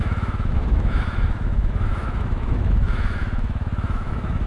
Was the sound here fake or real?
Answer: fake